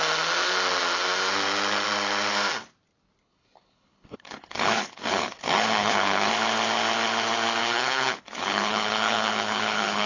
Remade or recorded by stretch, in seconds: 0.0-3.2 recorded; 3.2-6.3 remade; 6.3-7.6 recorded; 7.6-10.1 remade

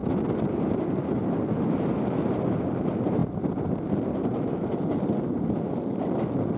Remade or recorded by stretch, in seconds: 0.0-6.6 recorded

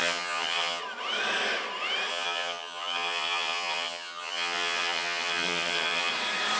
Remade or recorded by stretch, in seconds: 0.0-0.8 remade; 0.8-2.1 recorded; 2.1-6.1 remade; 6.1-6.6 recorded

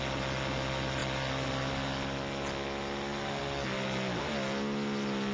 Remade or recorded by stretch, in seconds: 0.0-5.3 recorded

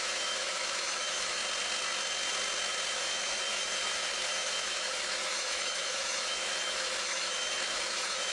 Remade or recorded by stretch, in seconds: 0.0-1.4 remade; 1.4-2.9 recorded; 2.9-8.3 remade

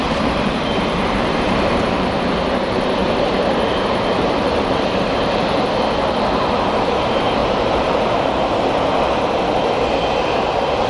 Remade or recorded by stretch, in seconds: 0.0-2.2 remade; 2.2-3.0 recorded; 3.0-5.7 remade; 5.7-7.4 recorded; 7.4-8.4 remade; 8.4-10.9 recorded